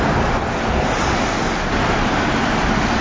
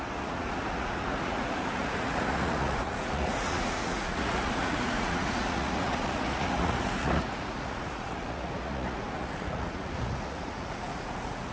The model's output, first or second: second